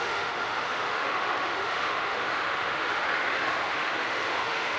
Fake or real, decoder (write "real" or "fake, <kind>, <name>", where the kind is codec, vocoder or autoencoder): fake, autoencoder, DAC-VAE